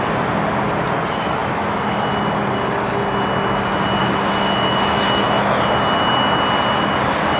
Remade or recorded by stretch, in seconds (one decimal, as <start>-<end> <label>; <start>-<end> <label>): 0.0-1.4 recorded; 1.4-2.1 remade; 2.1-4.0 recorded; 4.0-5.6 remade; 5.6-7.4 recorded